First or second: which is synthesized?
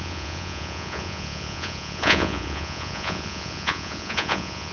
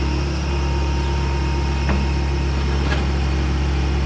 first